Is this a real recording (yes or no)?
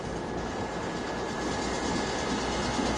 yes